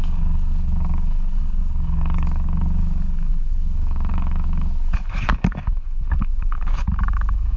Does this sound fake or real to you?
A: fake